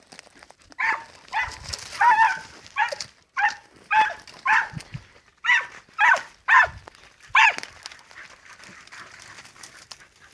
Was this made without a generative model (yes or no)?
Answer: yes